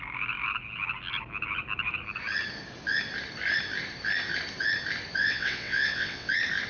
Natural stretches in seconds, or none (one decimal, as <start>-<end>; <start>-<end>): 0.0-5.2; 6.3-6.7